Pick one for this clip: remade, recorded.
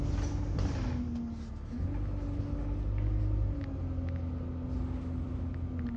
recorded